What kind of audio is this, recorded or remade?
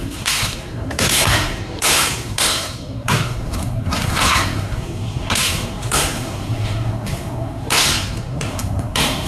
remade